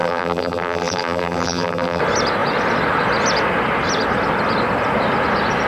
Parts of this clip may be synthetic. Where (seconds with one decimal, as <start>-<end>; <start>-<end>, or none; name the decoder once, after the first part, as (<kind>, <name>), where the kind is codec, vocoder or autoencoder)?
0.0-2.0 (vocoder, BigVGAN v2)

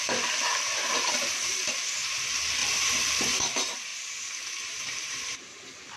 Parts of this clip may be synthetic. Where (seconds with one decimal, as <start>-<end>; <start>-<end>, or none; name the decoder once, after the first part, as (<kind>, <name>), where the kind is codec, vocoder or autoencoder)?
0.5-1.6 (vocoder, BigVGAN v2); 2.6-3.4; 3.9-5.4

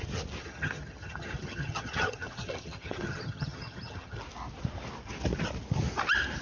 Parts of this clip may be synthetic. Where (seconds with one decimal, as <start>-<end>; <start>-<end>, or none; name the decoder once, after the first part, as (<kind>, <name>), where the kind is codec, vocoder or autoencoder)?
0.4-4.2 (vocoder, HiFi-GAN)

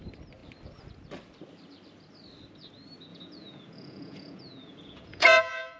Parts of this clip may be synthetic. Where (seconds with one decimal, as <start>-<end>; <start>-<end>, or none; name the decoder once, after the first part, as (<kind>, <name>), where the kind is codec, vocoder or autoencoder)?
3.1-5.8 (vocoder, Vocos)

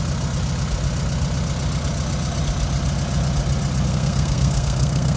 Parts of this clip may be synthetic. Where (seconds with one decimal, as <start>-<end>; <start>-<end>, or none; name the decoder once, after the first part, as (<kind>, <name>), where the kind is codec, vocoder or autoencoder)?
3.9-5.2 (codec, SNAC)

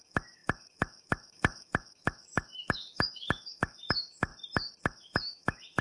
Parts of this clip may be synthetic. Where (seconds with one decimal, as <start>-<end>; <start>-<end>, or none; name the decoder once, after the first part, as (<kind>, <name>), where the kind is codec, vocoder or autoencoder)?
0.0-4.3 (autoencoder, DAC-VAE); 4.8-5.8